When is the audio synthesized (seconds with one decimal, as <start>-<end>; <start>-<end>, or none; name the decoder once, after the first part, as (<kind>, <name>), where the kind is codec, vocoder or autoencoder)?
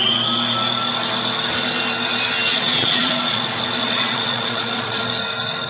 2.5-3.4 (vocoder, Vocos); 3.8-5.0